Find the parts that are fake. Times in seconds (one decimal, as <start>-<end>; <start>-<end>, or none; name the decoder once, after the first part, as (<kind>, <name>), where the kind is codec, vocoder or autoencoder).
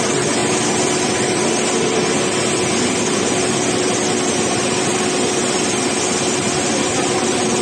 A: none